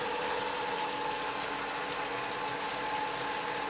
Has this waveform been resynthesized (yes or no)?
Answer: no